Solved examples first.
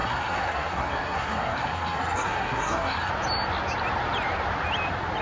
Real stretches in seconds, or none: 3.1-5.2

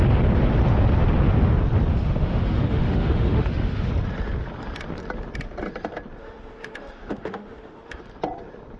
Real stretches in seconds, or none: 0.0-1.9; 3.9-6.2; 8.0-8.8